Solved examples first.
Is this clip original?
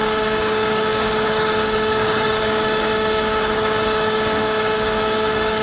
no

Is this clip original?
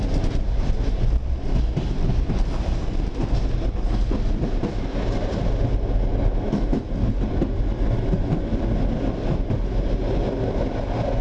yes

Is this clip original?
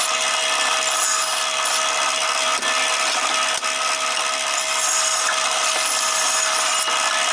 yes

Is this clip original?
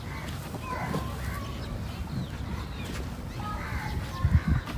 yes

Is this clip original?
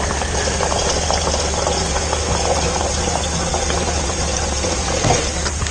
yes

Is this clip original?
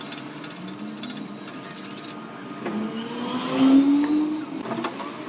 yes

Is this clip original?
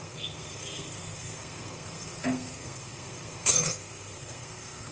no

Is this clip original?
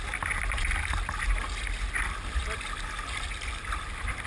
yes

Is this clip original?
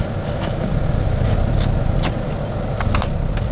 yes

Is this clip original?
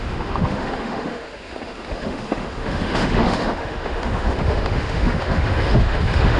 no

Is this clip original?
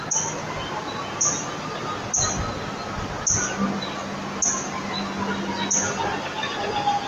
yes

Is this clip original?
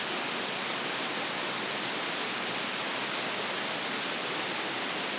yes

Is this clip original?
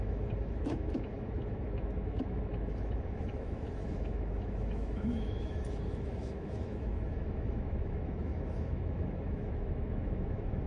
no